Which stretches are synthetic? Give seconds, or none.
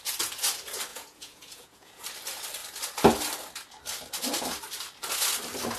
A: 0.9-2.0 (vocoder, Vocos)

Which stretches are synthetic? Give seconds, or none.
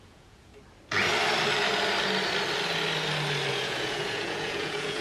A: 0.0-0.5 (vocoder, Vocos); 3.5-5.0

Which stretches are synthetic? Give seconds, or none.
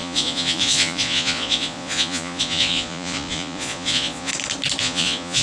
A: 0.0-4.3 (vocoder, Vocos); 4.8-5.4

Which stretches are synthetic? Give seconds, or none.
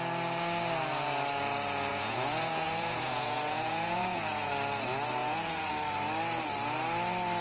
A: 1.9-4.5 (vocoder, Vocos); 5.2-5.7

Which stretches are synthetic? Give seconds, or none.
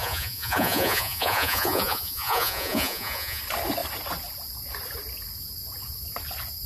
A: 0.0-3.4 (vocoder, Vocos)